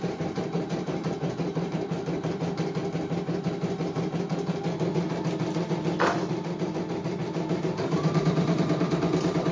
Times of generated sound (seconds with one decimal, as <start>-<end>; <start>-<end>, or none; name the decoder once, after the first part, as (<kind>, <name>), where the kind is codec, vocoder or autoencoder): 0.0-2.8 (vocoder, BigVGAN v2); 7.6-9.5